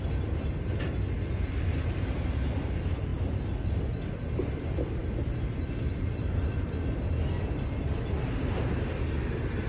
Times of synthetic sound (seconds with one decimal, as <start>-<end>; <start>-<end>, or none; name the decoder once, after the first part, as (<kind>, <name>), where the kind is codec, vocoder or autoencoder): 0.0-3.1 (vocoder, BigVGAN v2); 4.1-9.7